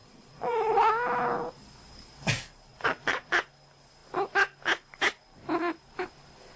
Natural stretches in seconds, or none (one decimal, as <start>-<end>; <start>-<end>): 0.9-2.7; 3.4-6.6